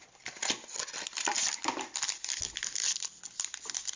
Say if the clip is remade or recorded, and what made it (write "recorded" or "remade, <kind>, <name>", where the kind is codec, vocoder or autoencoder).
recorded